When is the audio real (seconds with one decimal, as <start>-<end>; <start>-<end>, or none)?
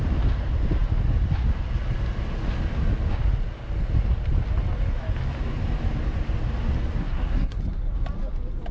0.0-7.0; 7.6-8.7